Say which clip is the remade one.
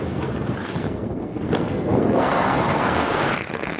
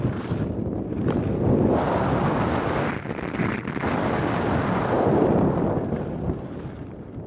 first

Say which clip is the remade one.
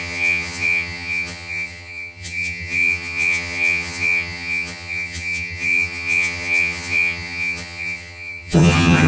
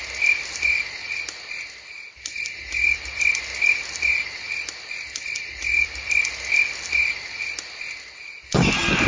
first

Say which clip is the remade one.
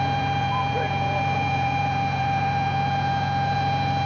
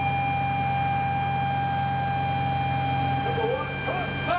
first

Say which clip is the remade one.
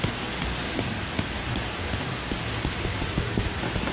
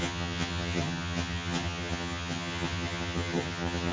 second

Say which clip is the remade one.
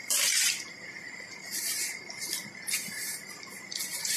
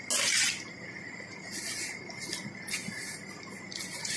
first